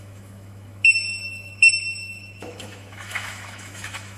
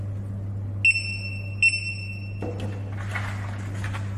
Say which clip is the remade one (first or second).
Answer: first